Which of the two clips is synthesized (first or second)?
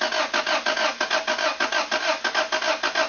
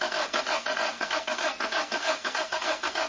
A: second